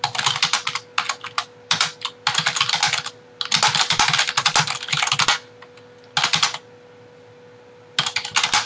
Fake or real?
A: real